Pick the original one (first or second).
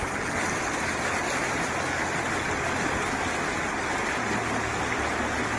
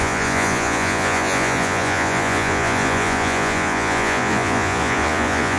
first